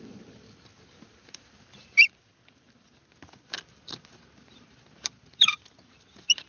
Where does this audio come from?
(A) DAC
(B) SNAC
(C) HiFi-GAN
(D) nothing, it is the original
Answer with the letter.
D